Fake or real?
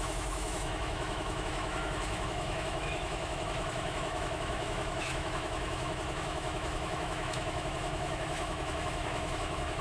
fake